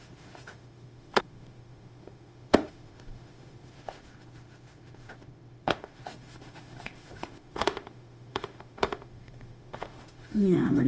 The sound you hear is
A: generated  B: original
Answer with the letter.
A